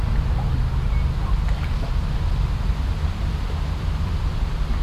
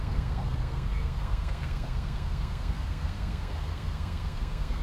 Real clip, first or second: first